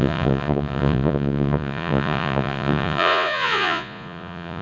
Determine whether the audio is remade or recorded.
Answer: remade